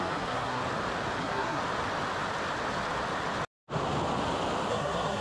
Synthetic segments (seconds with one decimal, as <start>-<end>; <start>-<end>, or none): 0.0-0.6; 1.2-1.6; 4.7-5.2